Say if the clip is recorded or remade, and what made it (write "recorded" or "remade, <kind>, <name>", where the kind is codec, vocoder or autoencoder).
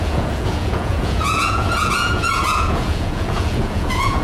remade, vocoder, Vocos